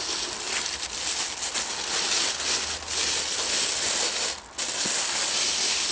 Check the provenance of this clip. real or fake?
real